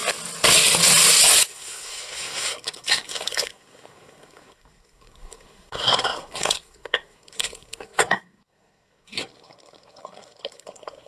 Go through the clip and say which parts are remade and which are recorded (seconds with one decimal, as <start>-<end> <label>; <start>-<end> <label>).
0.0-1.4 recorded; 1.4-11.1 remade